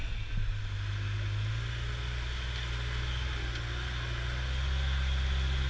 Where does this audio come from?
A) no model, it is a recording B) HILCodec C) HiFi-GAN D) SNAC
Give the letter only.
A